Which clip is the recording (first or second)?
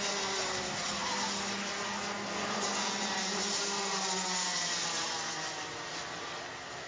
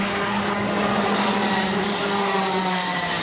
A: first